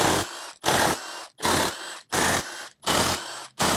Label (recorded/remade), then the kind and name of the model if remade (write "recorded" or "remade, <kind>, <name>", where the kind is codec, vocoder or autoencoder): recorded